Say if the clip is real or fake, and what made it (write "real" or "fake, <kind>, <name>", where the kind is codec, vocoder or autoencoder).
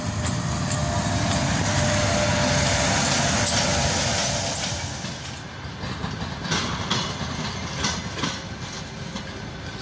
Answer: real